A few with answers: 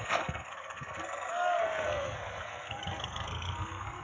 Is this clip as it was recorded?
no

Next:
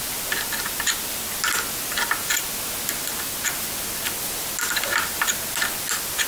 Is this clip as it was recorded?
yes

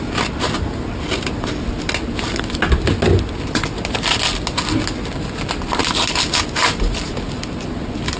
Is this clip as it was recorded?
yes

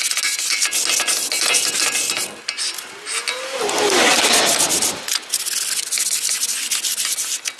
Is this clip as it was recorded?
yes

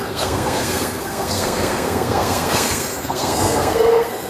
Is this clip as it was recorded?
no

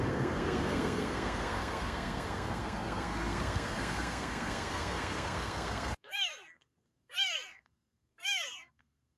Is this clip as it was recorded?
no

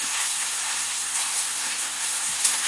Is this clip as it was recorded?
no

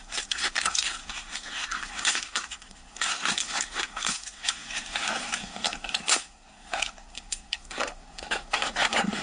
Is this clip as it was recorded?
no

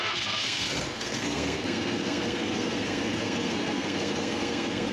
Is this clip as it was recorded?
no